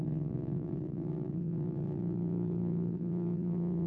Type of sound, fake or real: fake